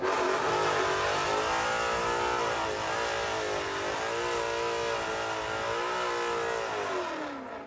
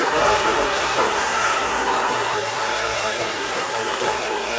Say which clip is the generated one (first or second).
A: second